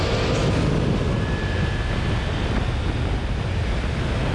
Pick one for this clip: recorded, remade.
recorded